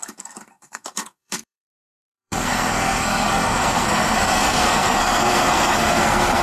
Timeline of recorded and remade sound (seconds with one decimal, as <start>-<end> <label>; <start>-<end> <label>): 0.0-6.4 remade